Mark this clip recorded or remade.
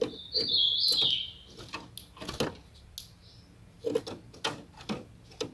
recorded